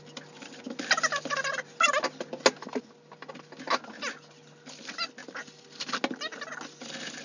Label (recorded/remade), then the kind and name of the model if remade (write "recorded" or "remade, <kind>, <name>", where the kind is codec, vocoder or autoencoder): recorded